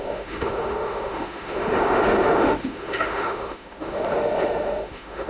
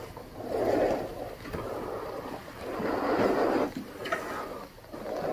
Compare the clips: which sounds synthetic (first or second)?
first